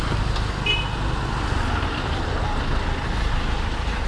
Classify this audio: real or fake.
real